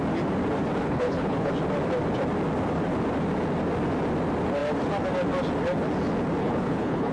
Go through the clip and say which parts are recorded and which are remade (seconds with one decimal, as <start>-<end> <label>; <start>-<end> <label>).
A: 0.0-0.8 recorded; 0.8-1.5 remade; 1.5-6.4 recorded; 6.4-7.1 remade